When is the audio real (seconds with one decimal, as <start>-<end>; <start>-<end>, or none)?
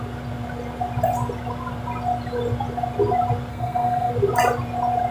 0.0-3.5; 4.1-5.1